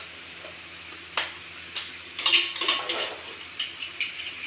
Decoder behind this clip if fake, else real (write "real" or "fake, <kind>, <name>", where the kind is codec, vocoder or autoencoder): real